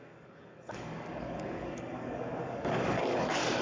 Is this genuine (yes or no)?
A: no